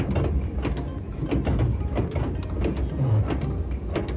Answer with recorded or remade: recorded